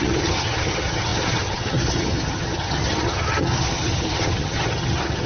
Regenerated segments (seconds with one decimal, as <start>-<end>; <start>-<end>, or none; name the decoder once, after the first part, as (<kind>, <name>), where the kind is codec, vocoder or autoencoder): 0.0-5.3 (vocoder, HiFi-GAN)